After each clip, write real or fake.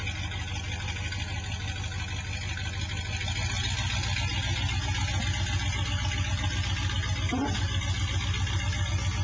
real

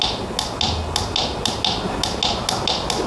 real